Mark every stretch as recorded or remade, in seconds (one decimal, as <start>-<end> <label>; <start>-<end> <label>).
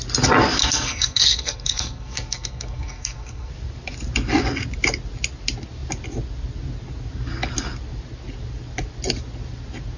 0.0-0.6 recorded; 0.6-3.5 remade; 3.5-10.0 recorded